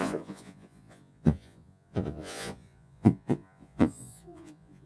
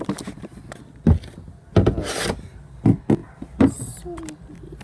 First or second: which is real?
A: second